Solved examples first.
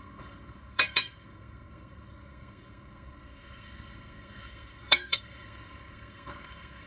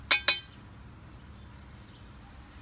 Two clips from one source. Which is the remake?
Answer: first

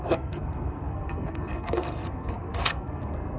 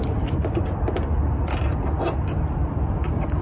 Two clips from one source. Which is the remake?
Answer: first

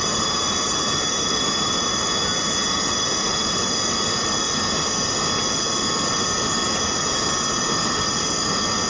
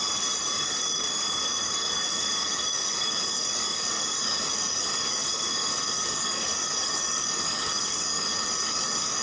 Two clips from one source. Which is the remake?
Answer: second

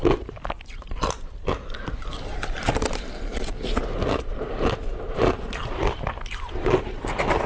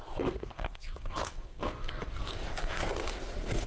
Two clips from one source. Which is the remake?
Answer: second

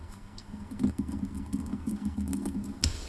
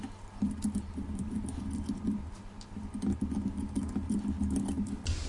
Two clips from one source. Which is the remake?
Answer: first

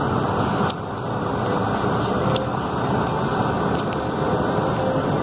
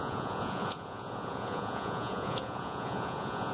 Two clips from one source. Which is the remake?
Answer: second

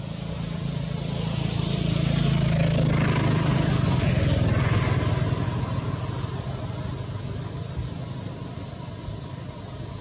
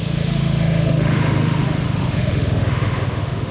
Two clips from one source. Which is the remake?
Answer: second